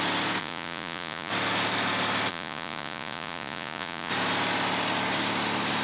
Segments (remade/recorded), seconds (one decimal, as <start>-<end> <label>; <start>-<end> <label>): 0.0-0.4 recorded; 0.4-1.3 remade; 1.3-2.3 recorded; 2.3-4.1 remade; 4.1-5.8 recorded